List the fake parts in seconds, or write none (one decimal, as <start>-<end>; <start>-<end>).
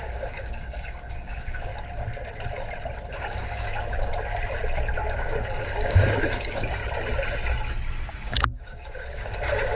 0.0-1.7; 3.1-4.1; 5.2-6.8; 8.1-9.8